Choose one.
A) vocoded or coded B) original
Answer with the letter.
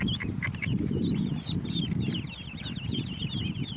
B